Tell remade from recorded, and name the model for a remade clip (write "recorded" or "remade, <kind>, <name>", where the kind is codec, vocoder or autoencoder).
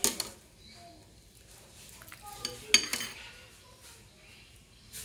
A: recorded